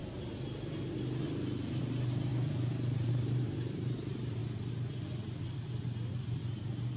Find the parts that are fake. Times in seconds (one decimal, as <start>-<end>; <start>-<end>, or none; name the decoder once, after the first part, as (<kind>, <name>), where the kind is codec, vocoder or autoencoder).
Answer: 1.8-2.3 (vocoder, BigVGAN v2); 3.1-4.4; 6.1-7.0

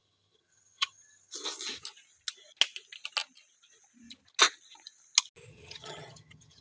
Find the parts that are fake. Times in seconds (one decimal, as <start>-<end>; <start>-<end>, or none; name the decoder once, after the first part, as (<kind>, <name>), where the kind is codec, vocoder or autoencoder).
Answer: 0.0-1.3 (vocoder, HiFi-GAN); 5.5-6.6